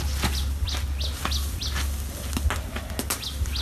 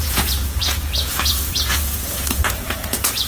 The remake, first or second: second